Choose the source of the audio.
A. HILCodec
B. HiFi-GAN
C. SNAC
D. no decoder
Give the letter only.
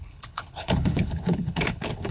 A